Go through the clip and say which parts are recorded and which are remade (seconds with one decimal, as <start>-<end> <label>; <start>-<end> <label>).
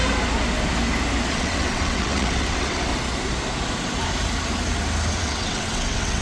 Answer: 0.0-1.3 recorded; 1.3-2.9 remade; 2.9-5.1 recorded; 5.1-6.2 remade